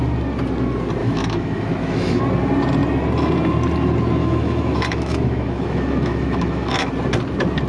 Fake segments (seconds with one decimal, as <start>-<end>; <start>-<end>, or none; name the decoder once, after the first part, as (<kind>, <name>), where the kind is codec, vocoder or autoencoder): 1.0-2.2 (autoencoder, DAC-VAE); 4.2-6.9